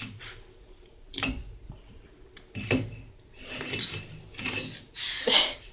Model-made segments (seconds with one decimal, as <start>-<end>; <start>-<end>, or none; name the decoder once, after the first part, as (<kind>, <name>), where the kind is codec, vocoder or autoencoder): 0.0-1.4 (vocoder, BigVGAN v2); 4.8-5.7